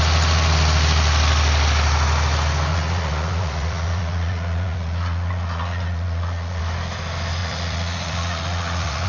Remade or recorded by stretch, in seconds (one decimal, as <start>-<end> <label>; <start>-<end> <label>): 0.0-2.7 recorded; 2.7-6.6 remade; 6.6-7.4 recorded; 7.4-9.1 remade